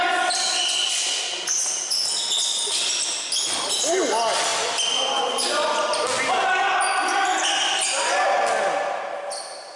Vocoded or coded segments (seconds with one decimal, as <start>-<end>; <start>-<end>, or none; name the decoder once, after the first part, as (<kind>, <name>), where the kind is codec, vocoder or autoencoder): none